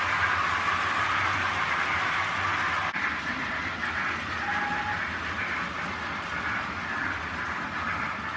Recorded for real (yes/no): yes